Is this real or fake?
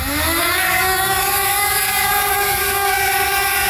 fake